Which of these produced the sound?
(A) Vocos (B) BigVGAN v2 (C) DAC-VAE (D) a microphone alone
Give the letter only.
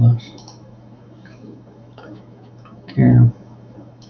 C